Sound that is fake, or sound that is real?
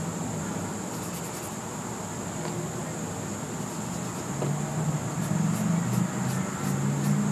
real